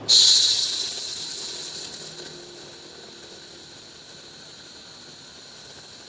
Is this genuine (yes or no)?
yes